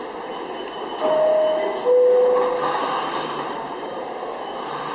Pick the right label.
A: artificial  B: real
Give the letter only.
B